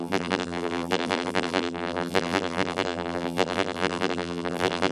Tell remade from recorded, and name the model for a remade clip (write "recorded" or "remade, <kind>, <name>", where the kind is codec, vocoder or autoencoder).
remade, vocoder, BigVGAN v2